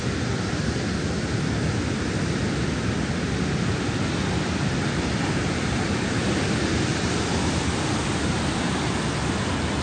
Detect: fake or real real